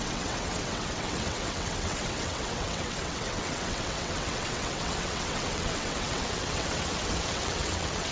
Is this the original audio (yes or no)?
no